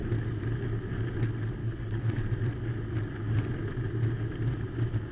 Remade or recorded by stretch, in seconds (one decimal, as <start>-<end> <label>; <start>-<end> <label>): 0.0-1.6 recorded; 1.6-2.2 remade; 2.2-5.1 recorded